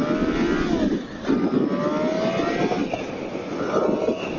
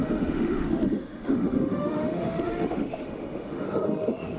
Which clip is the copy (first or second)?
second